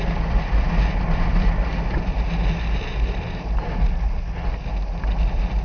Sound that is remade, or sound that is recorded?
recorded